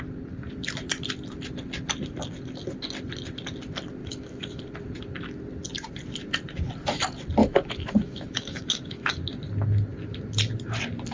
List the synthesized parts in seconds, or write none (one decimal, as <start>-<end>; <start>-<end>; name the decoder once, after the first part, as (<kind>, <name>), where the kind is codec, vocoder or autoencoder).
4.0-4.6 (autoencoder, DAC-VAE); 7.4-9.2